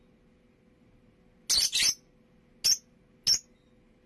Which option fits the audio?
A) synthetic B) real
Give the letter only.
B